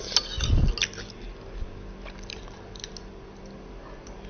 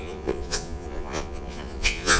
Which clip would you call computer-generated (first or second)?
second